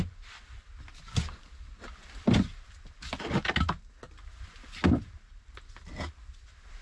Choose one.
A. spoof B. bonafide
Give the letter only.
B